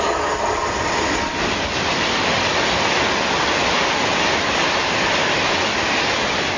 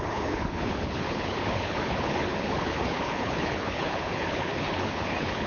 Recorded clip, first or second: first